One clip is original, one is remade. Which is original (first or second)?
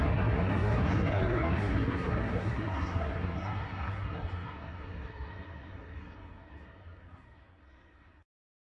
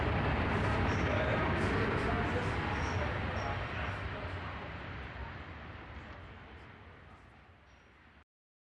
second